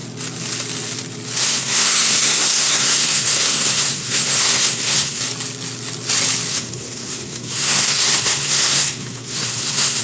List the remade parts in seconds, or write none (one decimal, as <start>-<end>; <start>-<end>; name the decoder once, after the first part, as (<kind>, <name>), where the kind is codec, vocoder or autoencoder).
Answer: 1.4-5.2 (codec, SNAC); 6.5-10.0